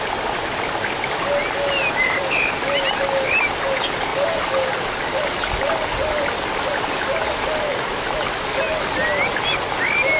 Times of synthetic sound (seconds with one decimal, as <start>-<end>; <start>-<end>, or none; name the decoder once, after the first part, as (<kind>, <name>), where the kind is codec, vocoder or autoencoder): none